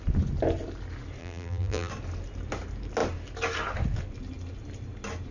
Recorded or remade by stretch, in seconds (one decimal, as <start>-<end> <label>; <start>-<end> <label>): 0.0-1.2 recorded; 1.2-1.9 remade; 1.9-5.3 recorded